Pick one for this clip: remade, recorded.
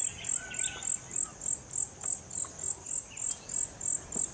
recorded